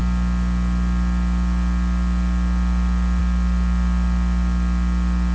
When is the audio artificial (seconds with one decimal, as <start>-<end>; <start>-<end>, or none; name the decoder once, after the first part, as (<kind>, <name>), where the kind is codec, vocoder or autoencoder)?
none